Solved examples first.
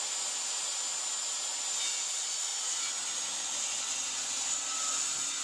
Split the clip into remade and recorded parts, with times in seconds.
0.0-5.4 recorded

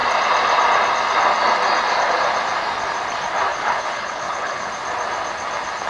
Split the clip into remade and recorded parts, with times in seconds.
0.0-3.5 recorded; 3.5-4.7 remade; 4.7-5.9 recorded